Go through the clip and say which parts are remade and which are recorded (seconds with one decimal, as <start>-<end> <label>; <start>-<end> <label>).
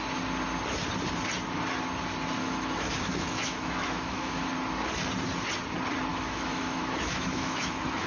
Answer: 0.0-2.4 recorded; 2.4-4.4 remade; 4.4-6.1 recorded; 6.1-8.1 remade